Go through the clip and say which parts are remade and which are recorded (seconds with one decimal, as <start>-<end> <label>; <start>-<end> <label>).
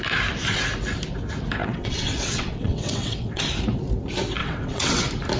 0.0-1.6 recorded; 1.6-3.4 remade; 3.4-4.4 recorded; 4.4-5.0 remade; 5.0-5.4 recorded